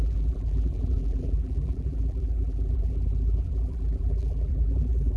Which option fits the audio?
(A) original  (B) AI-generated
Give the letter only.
B